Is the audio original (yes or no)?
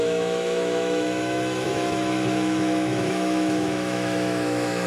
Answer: no